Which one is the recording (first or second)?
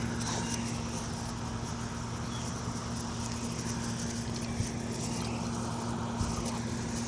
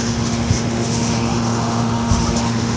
first